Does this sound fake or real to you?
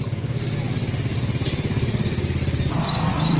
fake